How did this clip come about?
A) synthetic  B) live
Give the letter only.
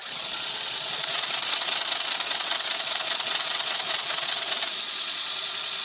A